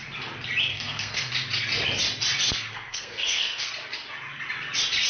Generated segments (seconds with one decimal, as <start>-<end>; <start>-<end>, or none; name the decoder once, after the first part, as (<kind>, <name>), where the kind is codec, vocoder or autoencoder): 0.7-1.3 (codec, SNAC); 2.7-3.7